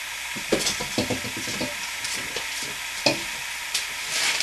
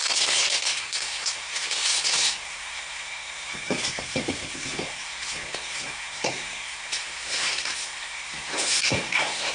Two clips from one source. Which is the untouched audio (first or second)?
first